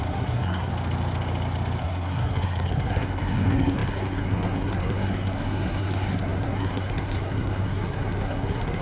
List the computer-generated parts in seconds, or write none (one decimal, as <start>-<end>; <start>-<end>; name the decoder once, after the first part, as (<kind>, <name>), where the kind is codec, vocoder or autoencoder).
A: 0.0-0.7 (codec, SNAC); 1.8-8.8